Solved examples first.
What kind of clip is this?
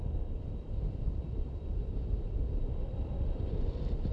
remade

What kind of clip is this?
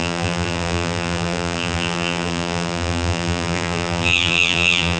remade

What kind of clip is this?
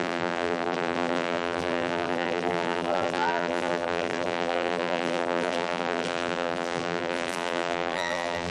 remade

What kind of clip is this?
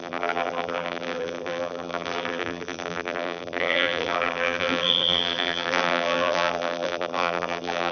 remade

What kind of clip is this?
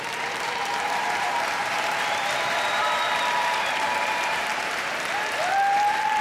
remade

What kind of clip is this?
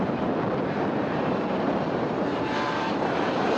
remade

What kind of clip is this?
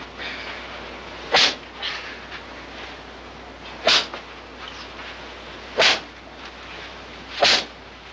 recorded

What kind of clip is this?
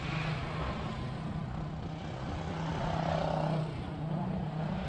recorded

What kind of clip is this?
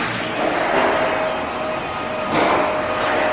recorded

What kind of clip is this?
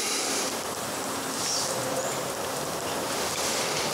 remade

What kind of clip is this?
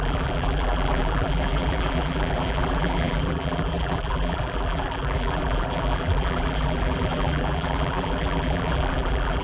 remade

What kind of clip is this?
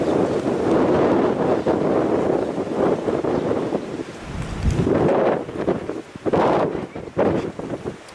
recorded